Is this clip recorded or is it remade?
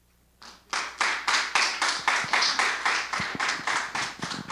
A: recorded